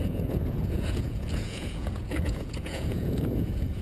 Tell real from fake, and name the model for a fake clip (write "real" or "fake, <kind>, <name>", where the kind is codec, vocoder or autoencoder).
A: fake, vocoder, Vocos